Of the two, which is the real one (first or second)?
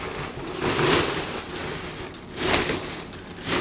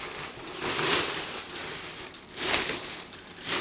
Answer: first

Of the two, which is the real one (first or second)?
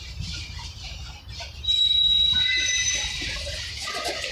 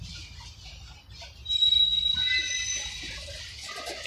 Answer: second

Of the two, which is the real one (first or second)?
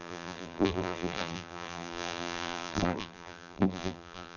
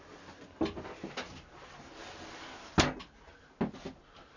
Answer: second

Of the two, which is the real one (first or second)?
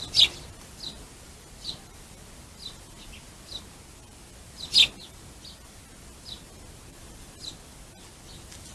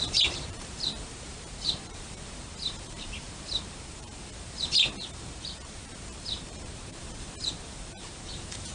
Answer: first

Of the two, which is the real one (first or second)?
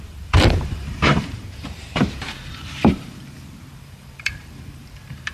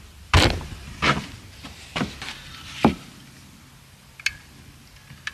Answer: second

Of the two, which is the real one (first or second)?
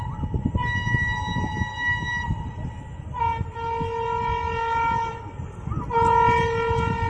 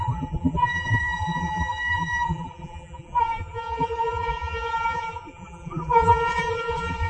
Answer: first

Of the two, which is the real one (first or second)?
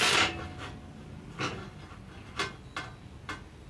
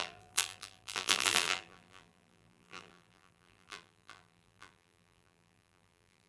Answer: first